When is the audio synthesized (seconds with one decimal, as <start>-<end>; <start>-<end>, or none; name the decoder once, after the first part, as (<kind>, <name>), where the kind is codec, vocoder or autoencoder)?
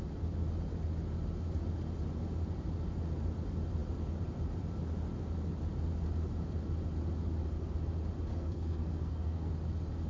8.3-9.5 (codec, SNAC)